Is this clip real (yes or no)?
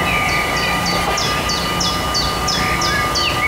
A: yes